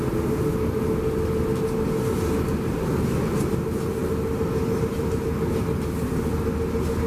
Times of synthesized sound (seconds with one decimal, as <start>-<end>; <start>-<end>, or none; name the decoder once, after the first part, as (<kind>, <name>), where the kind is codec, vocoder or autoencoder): none